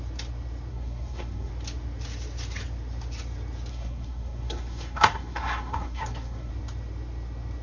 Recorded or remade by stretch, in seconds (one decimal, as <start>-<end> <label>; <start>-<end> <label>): 0.0-0.7 recorded; 0.7-1.5 remade; 1.5-3.7 recorded; 3.7-6.5 remade; 6.5-7.6 recorded